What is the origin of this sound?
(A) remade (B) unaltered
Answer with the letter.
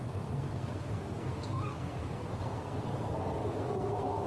A